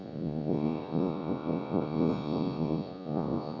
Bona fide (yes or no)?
no